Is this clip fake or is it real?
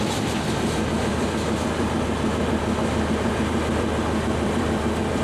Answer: fake